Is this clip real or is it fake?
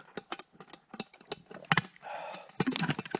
real